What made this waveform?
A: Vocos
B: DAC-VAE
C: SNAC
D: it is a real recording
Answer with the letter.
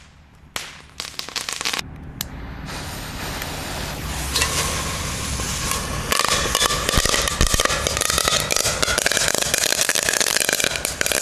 D